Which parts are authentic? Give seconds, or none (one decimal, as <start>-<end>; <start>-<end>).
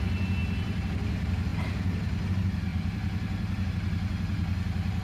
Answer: 0.0-5.0